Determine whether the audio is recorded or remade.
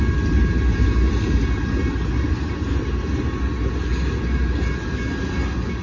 recorded